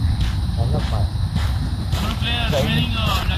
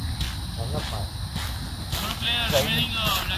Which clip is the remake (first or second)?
first